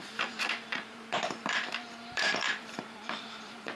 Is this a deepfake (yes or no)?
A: yes